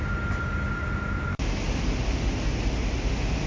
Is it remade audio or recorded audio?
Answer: recorded